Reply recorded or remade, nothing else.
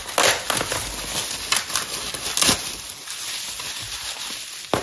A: recorded